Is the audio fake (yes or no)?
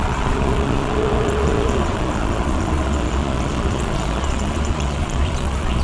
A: yes